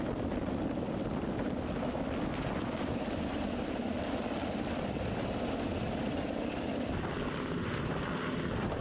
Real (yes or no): yes